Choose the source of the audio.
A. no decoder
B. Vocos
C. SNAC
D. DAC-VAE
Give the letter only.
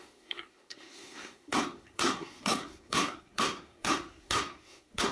C